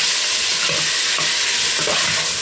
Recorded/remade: recorded